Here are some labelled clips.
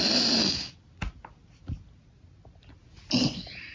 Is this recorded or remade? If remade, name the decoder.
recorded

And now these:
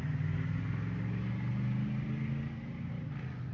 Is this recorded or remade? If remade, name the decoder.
recorded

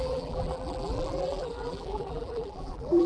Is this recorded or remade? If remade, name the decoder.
remade, vocoder, BigVGAN v2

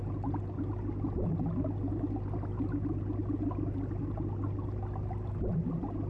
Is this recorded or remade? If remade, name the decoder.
recorded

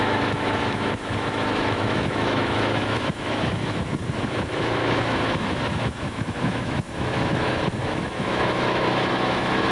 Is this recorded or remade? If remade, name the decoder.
remade, autoencoder, DAC-VAE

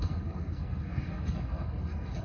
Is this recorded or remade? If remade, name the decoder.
remade, codec, SNAC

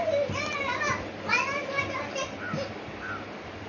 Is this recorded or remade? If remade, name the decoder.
recorded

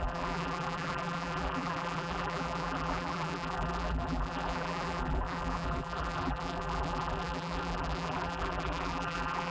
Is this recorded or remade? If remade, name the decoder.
remade, vocoder, BigVGAN v2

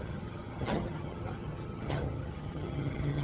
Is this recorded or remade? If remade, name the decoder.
remade, vocoder, HiFi-GAN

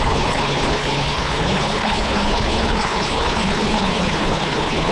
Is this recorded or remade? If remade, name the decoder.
remade, codec, HILCodec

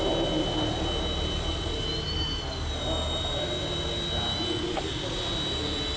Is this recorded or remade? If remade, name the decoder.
recorded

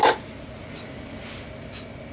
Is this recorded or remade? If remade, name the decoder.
recorded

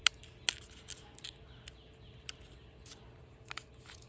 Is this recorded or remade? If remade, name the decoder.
recorded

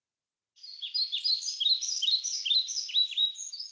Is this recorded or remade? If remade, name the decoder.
recorded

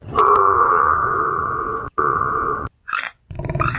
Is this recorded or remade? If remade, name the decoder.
remade, vocoder, Vocos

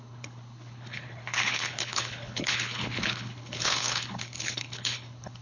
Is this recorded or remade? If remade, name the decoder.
remade, codec, HILCodec